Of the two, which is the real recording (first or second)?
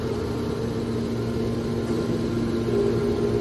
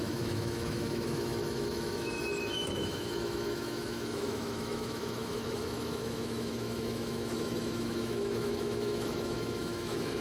first